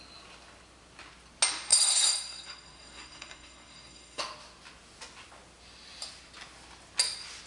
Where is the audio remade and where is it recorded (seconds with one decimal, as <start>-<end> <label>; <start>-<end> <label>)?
0.0-1.7 recorded; 1.7-4.2 remade; 4.2-7.5 recorded